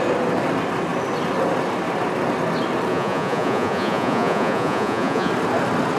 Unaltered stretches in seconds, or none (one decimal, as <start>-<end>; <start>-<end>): 0.0-2.9; 5.3-6.0